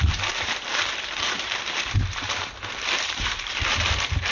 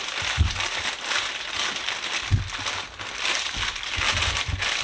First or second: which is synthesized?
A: first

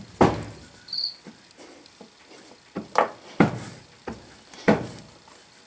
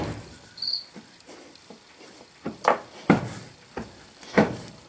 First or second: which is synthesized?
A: second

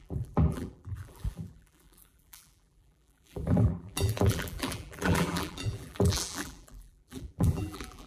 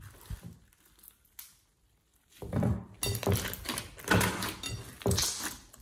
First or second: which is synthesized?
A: first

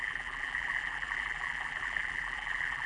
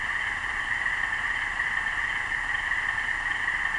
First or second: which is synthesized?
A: first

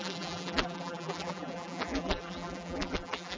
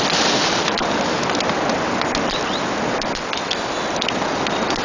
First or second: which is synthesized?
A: first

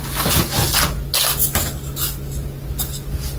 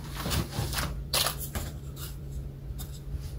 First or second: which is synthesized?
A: second